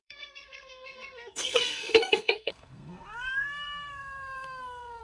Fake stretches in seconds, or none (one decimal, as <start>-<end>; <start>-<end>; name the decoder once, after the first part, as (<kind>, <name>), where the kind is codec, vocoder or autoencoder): 0.0-5.0 (codec, SNAC)